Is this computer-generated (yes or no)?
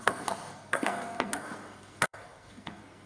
yes